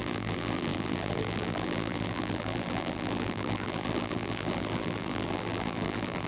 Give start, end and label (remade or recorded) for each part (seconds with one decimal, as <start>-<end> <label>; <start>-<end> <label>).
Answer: 0.0-6.3 remade